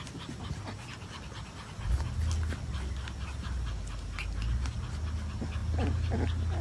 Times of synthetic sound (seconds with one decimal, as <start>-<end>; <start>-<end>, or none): none